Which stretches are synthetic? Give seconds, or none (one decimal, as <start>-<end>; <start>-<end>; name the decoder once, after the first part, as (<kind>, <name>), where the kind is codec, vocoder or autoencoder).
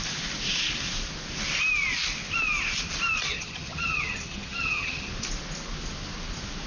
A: 3.3-5.1 (vocoder, HiFi-GAN)